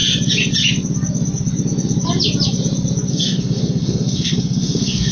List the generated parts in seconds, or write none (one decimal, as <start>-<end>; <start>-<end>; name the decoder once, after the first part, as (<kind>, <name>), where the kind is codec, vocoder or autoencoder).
3.1-5.1 (codec, SNAC)